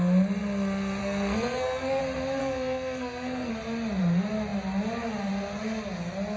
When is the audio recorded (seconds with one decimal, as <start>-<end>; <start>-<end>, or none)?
0.0-1.0; 2.0-2.4; 3.5-6.4